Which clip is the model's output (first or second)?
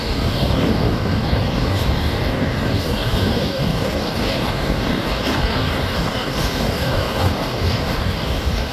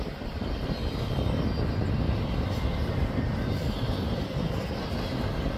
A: first